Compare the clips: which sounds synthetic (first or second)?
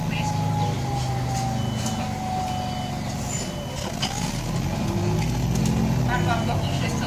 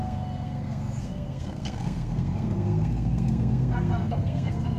second